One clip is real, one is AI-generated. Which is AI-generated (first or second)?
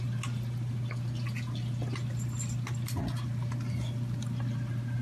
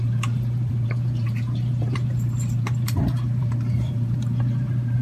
second